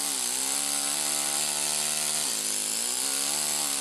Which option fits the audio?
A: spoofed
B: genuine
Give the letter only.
B